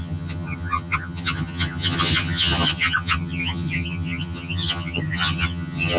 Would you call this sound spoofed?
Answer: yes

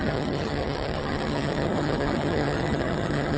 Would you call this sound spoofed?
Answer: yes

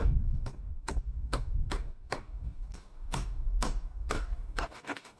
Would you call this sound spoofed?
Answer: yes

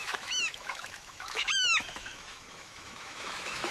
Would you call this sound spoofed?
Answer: yes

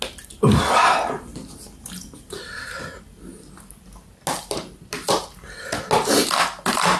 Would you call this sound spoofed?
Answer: no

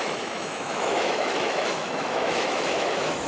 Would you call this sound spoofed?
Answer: yes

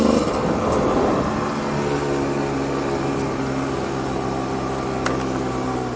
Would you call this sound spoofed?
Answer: no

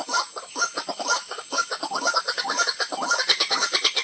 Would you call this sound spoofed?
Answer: yes